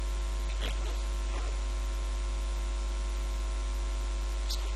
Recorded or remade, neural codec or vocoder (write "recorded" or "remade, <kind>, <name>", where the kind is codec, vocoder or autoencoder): recorded